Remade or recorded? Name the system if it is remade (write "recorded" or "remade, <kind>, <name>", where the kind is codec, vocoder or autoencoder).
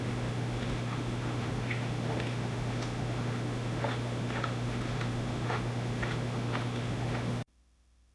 remade, autoencoder, DAC-VAE